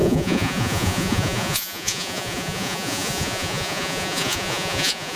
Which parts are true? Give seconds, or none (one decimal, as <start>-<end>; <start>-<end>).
none